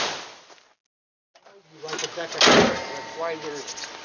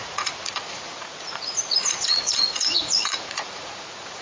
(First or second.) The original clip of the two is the first